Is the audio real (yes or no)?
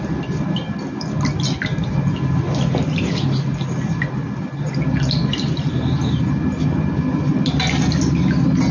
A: yes